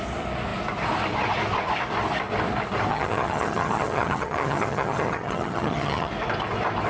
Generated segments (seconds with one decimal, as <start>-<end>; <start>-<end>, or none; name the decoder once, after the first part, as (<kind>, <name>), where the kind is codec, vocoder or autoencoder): 2.9-6.1 (vocoder, HiFi-GAN)